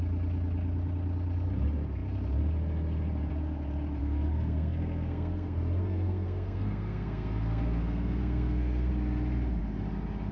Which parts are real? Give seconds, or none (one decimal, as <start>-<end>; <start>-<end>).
0.0-4.0; 8.9-10.3